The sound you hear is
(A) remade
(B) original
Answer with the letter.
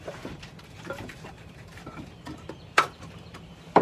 A